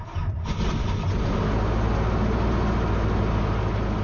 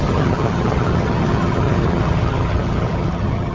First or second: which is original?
first